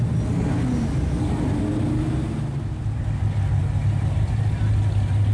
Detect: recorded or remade recorded